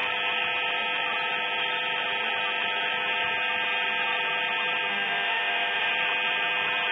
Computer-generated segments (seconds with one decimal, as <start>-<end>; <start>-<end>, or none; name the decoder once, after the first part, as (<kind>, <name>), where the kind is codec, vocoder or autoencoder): 4.9-5.9 (autoencoder, DAC-VAE)